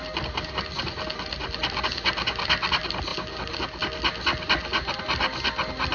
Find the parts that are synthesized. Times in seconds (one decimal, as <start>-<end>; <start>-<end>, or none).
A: none